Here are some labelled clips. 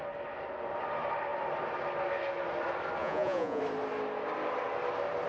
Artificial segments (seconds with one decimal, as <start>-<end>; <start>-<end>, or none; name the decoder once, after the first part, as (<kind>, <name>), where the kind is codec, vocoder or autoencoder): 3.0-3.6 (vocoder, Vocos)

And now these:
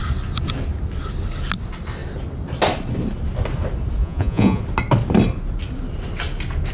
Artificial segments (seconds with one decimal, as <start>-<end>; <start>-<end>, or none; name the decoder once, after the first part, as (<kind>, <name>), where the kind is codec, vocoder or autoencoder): 4.0-4.6 (vocoder, Vocos)

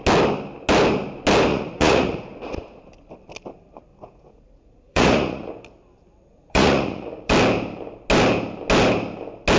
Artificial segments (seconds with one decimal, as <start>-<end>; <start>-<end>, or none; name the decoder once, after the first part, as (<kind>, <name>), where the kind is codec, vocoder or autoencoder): 1.5-2.8 (vocoder, Vocos); 3.9-5.5; 6.3-7.3

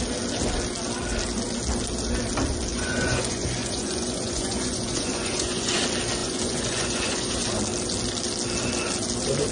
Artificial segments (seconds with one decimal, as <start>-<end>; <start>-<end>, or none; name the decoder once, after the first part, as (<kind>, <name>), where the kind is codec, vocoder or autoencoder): 2.7-5.8 (vocoder, Vocos); 6.2-7.3

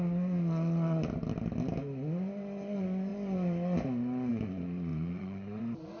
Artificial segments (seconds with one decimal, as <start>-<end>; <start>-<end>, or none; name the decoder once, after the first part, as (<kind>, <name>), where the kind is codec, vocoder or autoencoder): 4.9-5.6 (vocoder, Vocos)